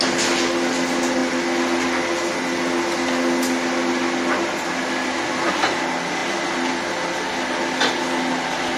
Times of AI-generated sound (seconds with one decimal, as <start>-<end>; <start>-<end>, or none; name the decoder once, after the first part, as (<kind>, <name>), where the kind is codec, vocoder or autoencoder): none